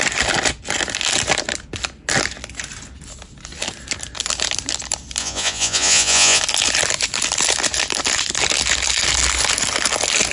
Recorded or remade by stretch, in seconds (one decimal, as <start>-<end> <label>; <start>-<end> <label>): 0.0-5.2 recorded; 5.2-6.4 remade; 6.4-10.3 recorded